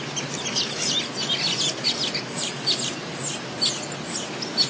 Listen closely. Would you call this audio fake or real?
real